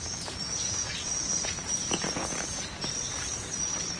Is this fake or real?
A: fake